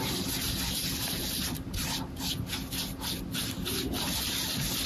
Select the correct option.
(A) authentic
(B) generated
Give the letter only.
A